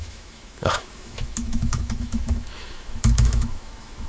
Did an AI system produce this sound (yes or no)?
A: yes